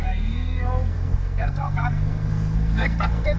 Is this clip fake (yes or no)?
yes